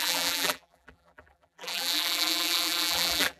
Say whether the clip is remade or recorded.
remade